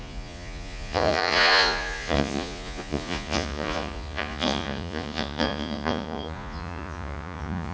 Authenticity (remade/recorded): remade